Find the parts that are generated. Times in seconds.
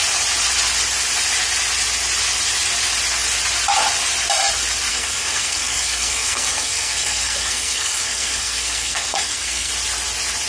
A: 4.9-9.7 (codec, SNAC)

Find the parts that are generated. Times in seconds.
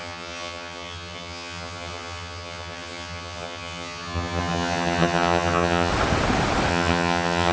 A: 0.0-5.9 (vocoder, HiFi-GAN); 6.7-7.5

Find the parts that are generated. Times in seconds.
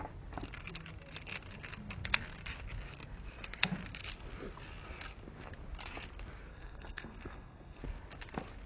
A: 6.5-7.8 (codec, SNAC)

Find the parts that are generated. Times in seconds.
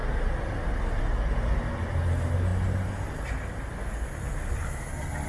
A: none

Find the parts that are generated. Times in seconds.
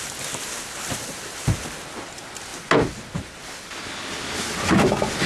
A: none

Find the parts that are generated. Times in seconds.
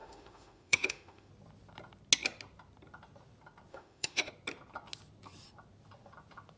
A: 0.0-1.3 (autoencoder, DAC-VAE); 3.7-4.3